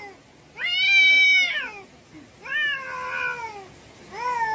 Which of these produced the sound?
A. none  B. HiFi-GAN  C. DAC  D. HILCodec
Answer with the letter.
A